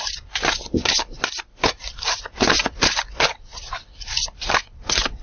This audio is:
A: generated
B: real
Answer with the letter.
A